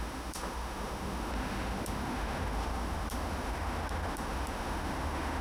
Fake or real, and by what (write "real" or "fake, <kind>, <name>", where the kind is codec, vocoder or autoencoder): fake, autoencoder, DAC-VAE